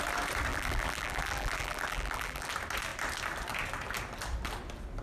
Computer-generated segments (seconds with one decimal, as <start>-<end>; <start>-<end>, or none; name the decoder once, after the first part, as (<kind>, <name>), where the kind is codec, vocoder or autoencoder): 0.5-2.5 (vocoder, BigVGAN v2)